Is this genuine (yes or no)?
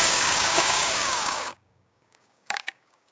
no